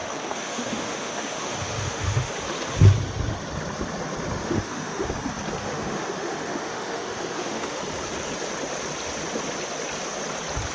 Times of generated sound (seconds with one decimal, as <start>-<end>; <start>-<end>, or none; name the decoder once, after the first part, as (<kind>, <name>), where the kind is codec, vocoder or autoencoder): 0.0-2.3 (autoencoder, DAC-VAE); 4.4-5.1; 5.6-7.8